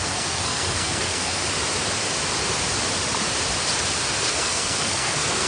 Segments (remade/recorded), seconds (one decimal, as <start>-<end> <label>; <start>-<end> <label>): 0.0-1.4 remade; 1.4-4.3 recorded; 4.3-5.5 remade